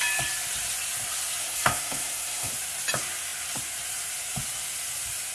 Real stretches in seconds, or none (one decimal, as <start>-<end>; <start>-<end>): 0.0-1.4; 2.5-5.3